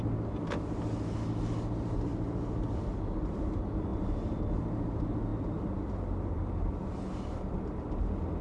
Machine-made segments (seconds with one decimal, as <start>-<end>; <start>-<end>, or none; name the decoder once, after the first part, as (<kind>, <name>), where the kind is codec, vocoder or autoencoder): 3.9-4.4 (vocoder, BigVGAN v2); 5.3-6.5